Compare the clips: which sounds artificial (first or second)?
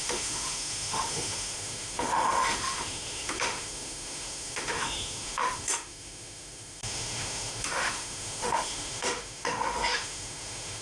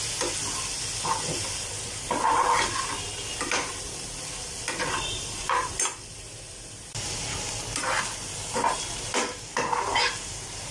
first